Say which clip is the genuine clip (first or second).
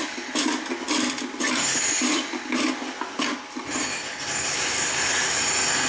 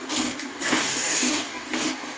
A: first